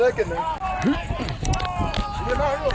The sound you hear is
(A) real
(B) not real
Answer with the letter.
A